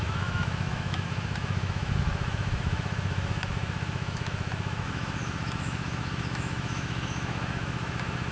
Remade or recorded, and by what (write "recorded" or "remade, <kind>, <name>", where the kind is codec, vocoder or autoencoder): remade, autoencoder, DAC-VAE